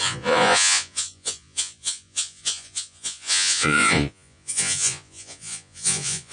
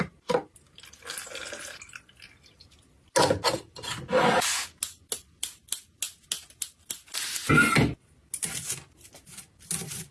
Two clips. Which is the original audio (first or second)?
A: second